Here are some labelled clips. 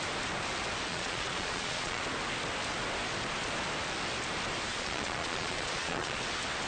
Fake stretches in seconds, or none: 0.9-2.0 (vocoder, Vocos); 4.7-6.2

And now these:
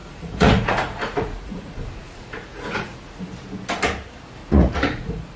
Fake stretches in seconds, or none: 0.0-3.2 (vocoder, Vocos); 4.4-5.4